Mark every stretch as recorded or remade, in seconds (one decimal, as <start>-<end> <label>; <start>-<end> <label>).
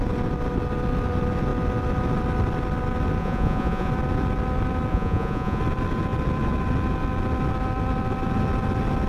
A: 0.0-3.2 recorded; 3.2-3.9 remade; 3.9-4.9 recorded; 4.9-5.6 remade; 5.6-9.1 recorded